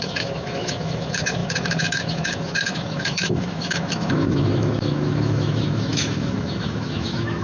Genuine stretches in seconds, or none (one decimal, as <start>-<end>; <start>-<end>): none